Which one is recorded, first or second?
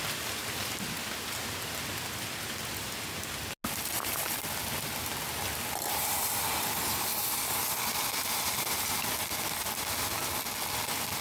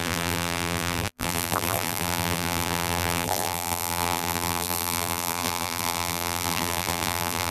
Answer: first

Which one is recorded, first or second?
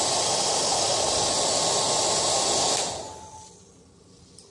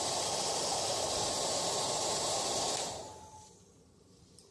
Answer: first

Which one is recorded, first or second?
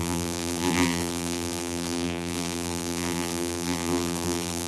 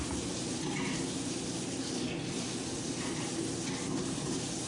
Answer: second